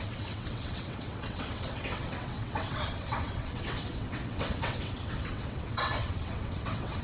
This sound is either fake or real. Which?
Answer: fake